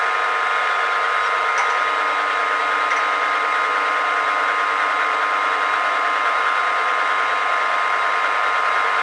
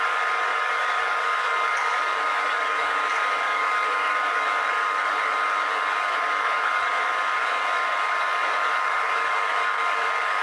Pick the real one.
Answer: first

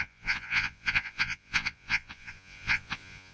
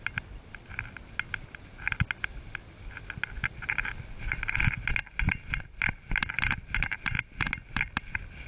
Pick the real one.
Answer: second